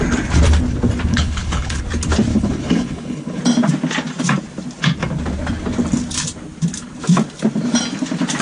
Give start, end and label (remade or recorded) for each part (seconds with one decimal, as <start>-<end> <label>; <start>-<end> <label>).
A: 0.0-1.1 recorded; 1.1-1.8 remade; 1.8-2.3 recorded; 2.3-3.4 remade; 3.4-8.4 recorded